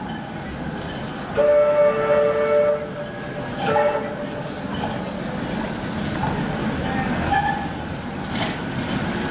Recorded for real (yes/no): yes